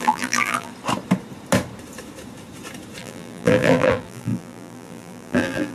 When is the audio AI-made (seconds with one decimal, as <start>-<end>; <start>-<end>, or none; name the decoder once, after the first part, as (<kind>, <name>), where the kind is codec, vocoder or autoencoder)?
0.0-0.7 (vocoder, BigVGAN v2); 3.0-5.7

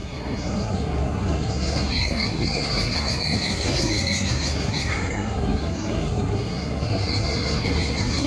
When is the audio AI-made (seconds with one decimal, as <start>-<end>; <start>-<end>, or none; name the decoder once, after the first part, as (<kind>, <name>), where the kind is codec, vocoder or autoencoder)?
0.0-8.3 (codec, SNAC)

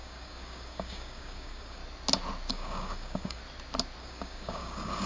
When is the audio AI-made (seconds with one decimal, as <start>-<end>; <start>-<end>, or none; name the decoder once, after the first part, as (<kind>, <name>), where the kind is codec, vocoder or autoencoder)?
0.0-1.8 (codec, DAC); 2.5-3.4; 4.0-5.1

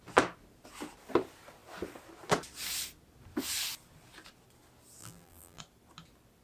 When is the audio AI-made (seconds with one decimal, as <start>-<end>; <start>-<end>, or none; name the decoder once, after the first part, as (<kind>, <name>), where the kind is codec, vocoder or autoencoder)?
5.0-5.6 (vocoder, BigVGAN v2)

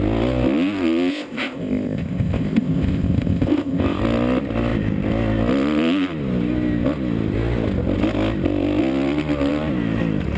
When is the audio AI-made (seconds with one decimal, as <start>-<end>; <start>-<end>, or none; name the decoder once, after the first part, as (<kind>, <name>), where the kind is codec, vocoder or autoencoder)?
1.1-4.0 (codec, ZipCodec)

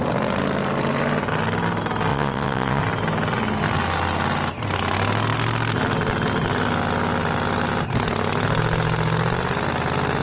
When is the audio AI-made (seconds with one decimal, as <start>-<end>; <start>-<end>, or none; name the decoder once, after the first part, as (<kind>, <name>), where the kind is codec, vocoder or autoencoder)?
2.1-2.8 (vocoder, WaveNeXt)